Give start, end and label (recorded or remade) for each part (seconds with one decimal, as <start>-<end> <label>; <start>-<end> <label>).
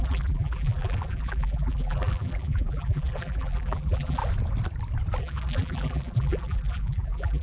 0.0-4.2 remade; 4.2-5.2 recorded; 5.2-7.4 remade